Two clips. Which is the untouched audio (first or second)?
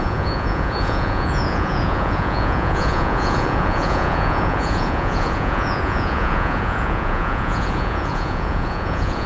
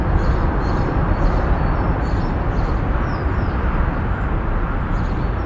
second